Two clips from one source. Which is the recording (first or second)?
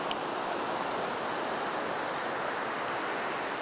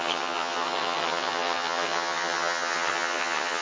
first